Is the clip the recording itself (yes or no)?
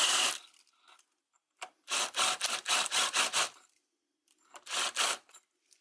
yes